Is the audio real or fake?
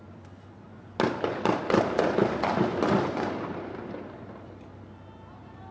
real